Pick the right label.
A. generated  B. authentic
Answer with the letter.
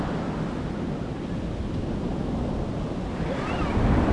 B